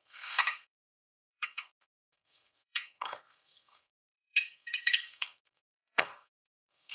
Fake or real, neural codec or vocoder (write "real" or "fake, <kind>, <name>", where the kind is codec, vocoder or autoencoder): fake, codec, SNAC